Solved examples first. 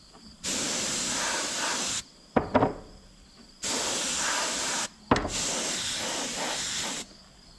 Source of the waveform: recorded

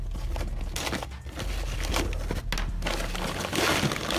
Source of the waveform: recorded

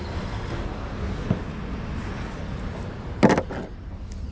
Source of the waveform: recorded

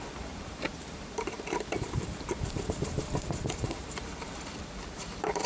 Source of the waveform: remade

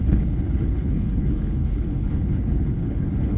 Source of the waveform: remade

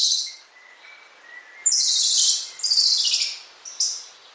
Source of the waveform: recorded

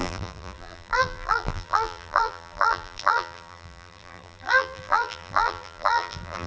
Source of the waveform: remade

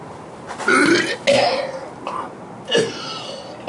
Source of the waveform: recorded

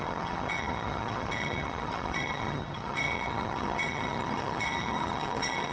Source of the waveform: remade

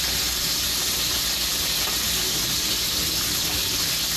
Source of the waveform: recorded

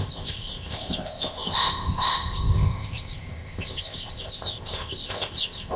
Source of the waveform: remade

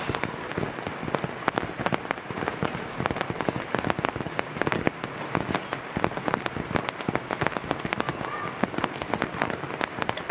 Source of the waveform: recorded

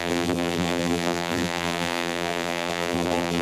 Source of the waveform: remade